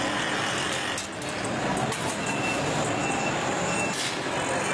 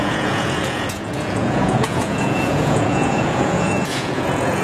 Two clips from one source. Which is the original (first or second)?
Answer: first